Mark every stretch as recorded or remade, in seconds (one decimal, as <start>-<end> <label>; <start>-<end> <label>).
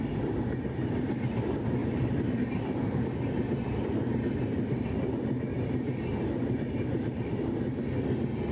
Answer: 0.0-1.8 recorded; 1.8-5.2 remade; 5.2-6.1 recorded; 6.1-7.7 remade; 7.7-8.5 recorded